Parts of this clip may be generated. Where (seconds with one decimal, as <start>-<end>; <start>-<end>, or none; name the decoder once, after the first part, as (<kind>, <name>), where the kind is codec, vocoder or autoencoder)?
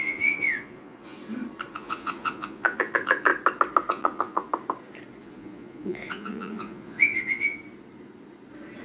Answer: 0.0-1.2 (vocoder, Vocos); 1.7-3.3; 3.9-4.5; 5.2-7.6